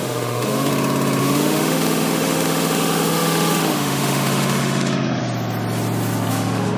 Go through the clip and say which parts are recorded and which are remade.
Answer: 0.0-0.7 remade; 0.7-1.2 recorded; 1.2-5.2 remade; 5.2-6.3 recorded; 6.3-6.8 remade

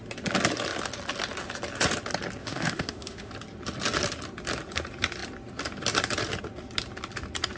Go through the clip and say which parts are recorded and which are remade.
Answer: 0.0-2.4 recorded; 2.4-3.3 remade; 3.3-7.6 recorded

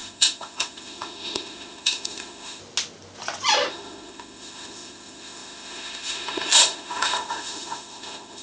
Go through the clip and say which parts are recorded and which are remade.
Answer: 0.0-2.6 remade; 2.6-3.7 recorded; 3.7-8.4 remade